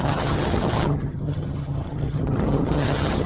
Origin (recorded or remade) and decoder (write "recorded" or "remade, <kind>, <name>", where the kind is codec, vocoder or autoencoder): remade, vocoder, HiFi-GAN